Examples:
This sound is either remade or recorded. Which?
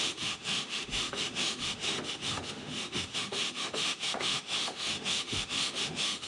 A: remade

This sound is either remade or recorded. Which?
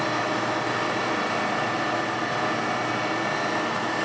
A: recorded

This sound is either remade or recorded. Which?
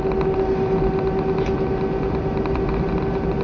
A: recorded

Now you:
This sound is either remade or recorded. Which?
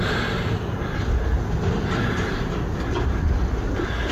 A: recorded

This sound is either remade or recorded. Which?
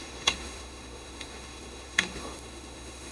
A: remade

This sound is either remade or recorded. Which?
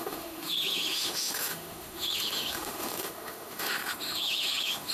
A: remade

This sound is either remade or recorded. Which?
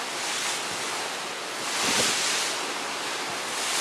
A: recorded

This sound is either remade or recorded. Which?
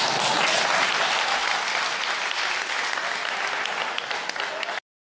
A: recorded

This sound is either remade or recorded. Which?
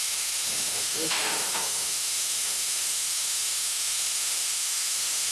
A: remade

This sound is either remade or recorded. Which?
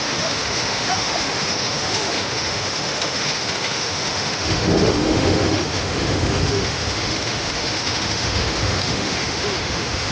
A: remade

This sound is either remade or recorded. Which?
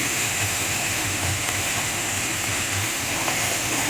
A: remade